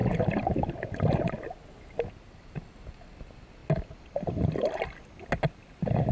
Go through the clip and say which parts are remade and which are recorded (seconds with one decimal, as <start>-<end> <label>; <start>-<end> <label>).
0.0-1.2 remade; 1.2-6.1 recorded